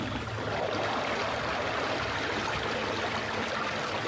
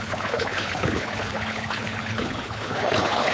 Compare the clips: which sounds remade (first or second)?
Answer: second